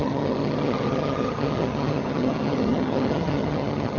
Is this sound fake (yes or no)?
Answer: yes